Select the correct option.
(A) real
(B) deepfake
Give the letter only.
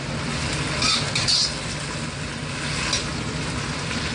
A